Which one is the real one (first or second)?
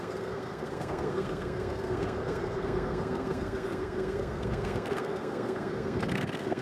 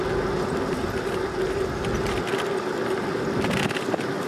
second